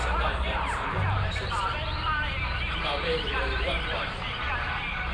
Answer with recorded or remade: remade